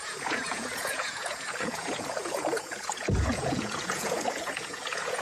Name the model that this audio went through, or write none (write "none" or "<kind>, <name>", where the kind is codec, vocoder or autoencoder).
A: vocoder, Vocos